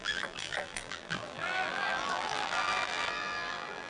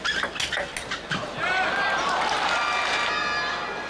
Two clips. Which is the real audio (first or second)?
second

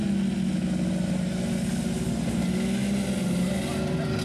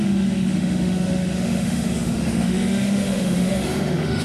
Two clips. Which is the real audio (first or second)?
first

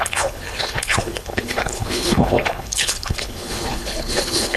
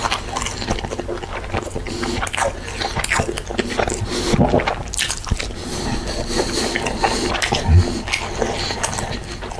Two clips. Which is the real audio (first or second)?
second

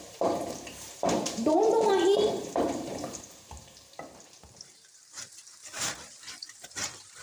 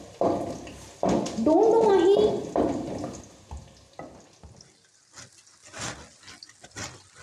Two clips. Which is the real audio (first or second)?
second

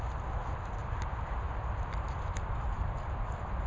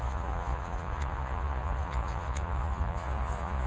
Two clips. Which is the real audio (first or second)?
first